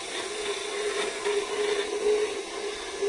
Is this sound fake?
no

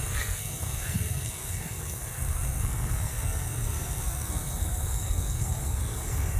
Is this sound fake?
yes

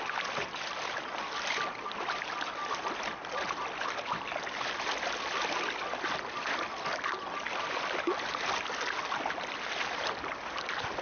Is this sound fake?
no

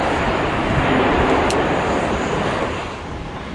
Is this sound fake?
no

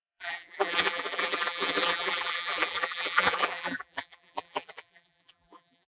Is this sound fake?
yes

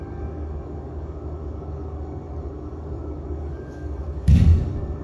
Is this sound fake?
yes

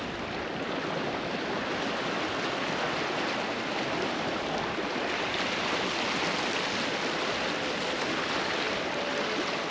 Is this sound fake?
no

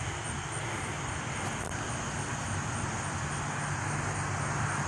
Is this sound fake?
no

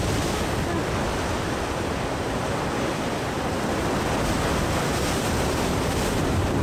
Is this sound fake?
no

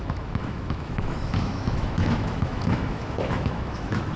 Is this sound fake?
yes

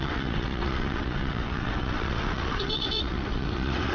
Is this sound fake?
yes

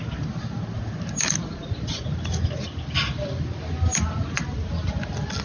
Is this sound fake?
no